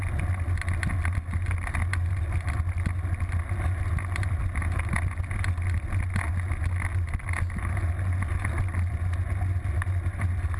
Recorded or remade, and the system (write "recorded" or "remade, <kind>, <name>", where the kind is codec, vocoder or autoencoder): recorded